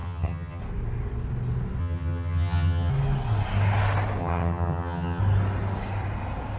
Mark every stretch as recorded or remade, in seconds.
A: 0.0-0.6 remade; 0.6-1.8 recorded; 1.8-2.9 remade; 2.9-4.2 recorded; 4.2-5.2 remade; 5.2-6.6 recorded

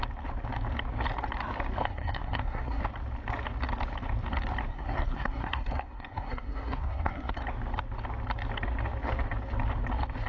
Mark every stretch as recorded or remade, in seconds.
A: 0.0-1.8 recorded; 1.8-2.8 remade; 2.8-4.7 recorded; 4.7-7.4 remade; 7.4-10.3 recorded

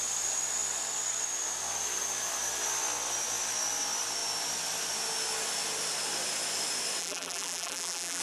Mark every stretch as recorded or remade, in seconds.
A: 0.0-7.0 recorded; 7.0-8.2 remade

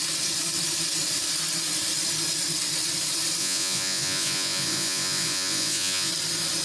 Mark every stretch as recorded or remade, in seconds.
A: 0.0-3.4 recorded; 3.4-6.1 remade; 6.1-6.6 recorded

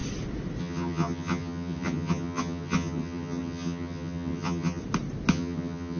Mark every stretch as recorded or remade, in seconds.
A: 0.0-0.6 recorded; 0.6-4.8 remade; 4.8-5.3 recorded; 5.3-6.0 remade